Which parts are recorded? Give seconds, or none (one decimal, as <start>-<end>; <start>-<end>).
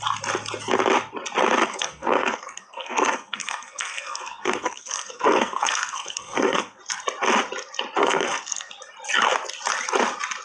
0.0-1.6; 6.8-8.0; 8.7-10.4